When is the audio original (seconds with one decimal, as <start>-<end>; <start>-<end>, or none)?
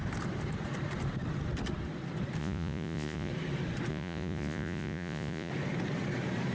0.0-2.4; 3.3-3.9; 5.5-6.5